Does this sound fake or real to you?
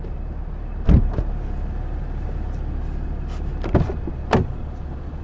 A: real